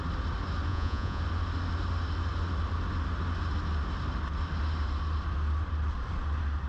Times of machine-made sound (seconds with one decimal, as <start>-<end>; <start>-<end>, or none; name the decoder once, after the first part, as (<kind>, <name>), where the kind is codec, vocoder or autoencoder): 0.7-1.2 (vocoder, Vocos)